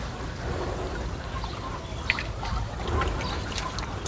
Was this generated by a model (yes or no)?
no